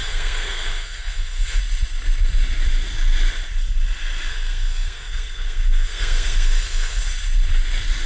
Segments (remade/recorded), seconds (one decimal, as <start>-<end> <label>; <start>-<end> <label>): 0.0-1.6 remade; 1.6-4.3 recorded; 4.3-7.0 remade; 7.0-8.1 recorded